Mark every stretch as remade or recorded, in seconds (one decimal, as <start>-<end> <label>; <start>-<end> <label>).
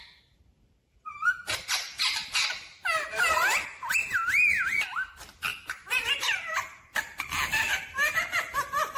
0.0-2.2 remade; 2.2-5.1 recorded; 5.1-9.0 remade